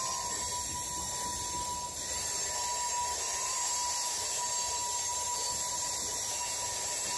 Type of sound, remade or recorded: recorded